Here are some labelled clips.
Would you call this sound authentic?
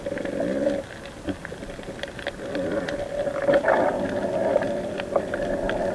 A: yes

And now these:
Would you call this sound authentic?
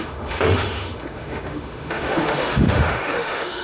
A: no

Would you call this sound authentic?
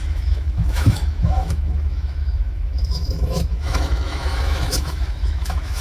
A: no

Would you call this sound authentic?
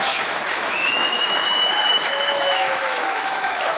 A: no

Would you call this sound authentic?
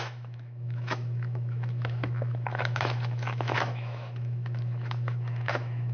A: no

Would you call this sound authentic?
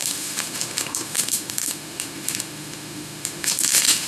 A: no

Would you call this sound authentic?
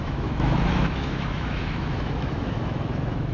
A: no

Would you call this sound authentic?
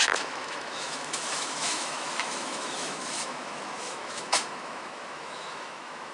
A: no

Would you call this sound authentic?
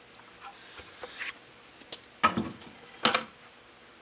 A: yes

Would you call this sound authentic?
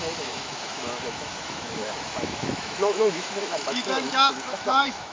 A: no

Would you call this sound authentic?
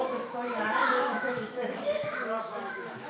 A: no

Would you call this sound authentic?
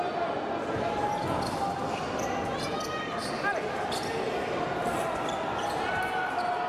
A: yes